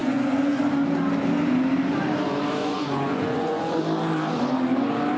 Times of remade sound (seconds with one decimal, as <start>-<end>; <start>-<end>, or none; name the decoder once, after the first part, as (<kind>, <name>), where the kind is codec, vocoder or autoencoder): 0.0-0.6 (vocoder, Vocos); 2.6-3.8